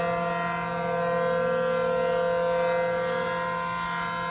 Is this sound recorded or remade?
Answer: recorded